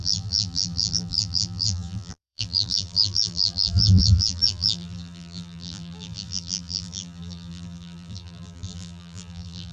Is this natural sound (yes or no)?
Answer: no